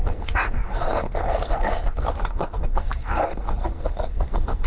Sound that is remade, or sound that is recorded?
remade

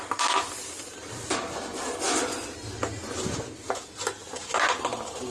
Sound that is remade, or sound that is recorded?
recorded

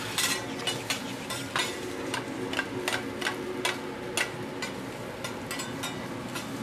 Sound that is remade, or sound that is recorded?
recorded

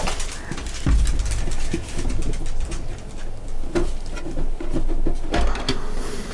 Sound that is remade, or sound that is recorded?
recorded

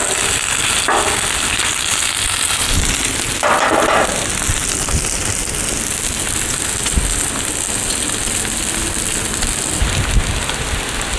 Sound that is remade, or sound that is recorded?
recorded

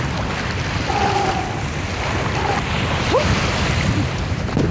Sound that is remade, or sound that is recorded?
recorded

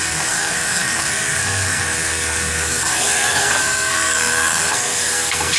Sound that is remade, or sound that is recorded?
remade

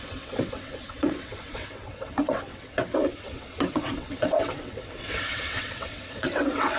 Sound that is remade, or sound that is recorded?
remade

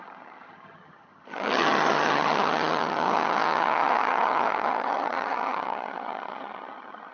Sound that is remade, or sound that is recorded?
remade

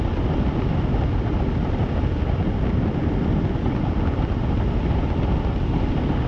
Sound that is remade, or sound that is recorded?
recorded